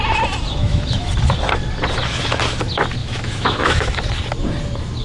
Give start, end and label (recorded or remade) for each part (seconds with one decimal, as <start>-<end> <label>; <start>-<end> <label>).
0.0-0.6 recorded; 0.6-1.1 remade; 1.1-3.0 recorded; 3.0-4.0 remade; 4.0-5.0 recorded